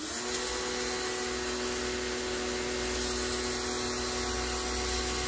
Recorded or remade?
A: recorded